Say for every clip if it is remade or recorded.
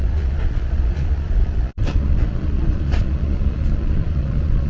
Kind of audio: remade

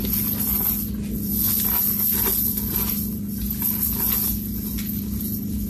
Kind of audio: recorded